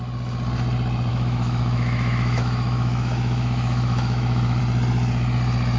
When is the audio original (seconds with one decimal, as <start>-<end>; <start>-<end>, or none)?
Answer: 0.0-1.1; 4.6-5.8